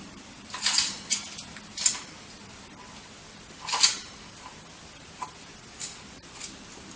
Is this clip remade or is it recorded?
recorded